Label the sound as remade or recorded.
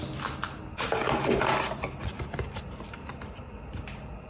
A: recorded